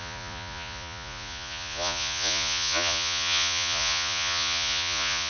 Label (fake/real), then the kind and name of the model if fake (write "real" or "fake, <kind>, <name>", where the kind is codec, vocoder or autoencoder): fake, vocoder, Vocos